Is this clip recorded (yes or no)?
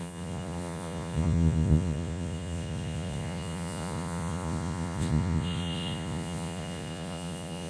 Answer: no